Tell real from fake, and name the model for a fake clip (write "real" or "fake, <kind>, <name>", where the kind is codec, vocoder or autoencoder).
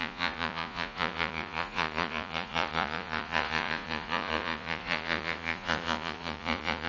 fake, vocoder, Vocos